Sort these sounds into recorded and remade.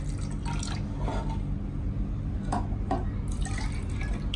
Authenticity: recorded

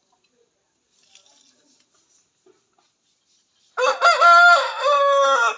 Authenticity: recorded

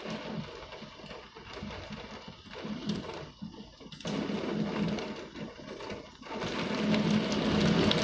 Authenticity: recorded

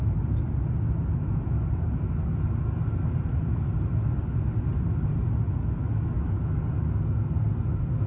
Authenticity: recorded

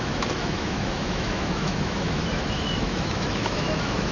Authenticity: remade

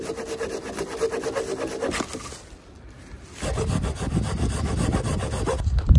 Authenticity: recorded